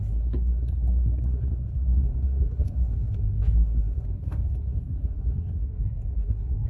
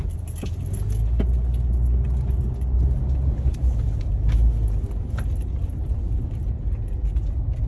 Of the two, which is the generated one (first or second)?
first